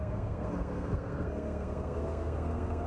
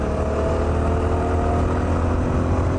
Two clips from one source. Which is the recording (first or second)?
second